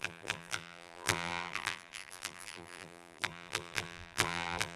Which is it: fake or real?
fake